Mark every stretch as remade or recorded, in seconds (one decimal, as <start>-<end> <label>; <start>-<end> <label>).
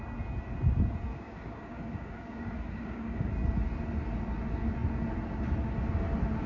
0.0-1.1 recorded; 1.1-3.3 remade; 3.3-6.5 recorded